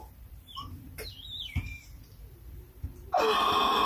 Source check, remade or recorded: remade